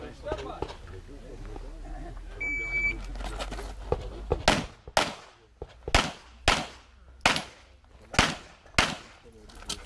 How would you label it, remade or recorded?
recorded